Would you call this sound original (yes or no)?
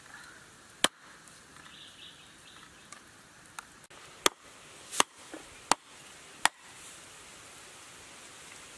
yes